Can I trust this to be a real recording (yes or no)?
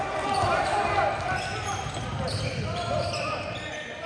yes